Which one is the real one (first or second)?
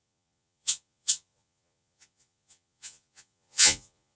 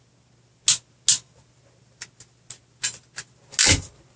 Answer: second